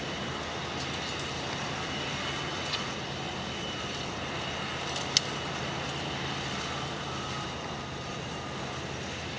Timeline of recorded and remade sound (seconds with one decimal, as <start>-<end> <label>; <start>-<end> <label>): 0.0-2.5 recorded; 2.5-3.0 remade; 3.0-9.4 recorded

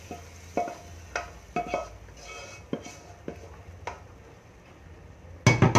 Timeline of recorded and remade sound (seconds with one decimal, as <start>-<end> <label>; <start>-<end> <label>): 0.0-5.8 recorded

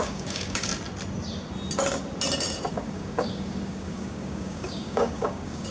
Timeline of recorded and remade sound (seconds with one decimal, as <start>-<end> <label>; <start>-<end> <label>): 0.0-0.7 remade; 0.7-2.7 recorded; 2.7-5.7 remade

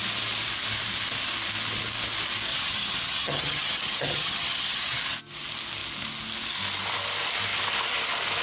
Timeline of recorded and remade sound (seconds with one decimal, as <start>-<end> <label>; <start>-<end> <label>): 0.0-2.5 recorded; 2.5-5.0 remade; 5.0-8.4 recorded